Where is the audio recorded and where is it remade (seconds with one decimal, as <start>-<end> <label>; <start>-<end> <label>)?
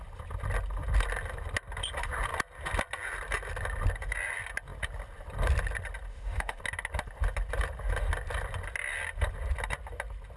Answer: 0.0-6.1 recorded; 6.1-6.6 remade; 6.6-10.4 recorded